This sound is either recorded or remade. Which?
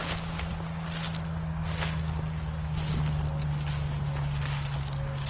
recorded